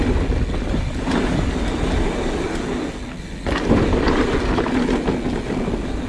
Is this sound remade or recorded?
recorded